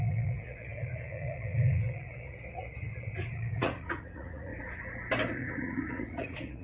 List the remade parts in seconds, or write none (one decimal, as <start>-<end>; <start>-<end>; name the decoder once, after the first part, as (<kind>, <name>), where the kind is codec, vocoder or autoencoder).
0.0-4.5 (vocoder, Vocos); 5.3-6.6